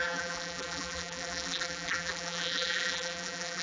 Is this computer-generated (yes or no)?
yes